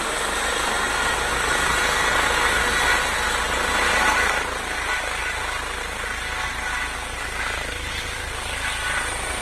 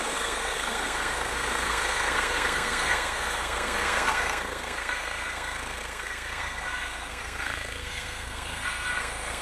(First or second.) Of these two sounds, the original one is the first